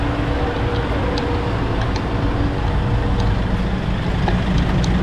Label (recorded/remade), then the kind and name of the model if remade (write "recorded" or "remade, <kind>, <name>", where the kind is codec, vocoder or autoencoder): recorded